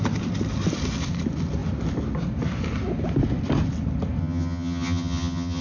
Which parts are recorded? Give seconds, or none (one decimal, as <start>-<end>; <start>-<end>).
0.0-4.2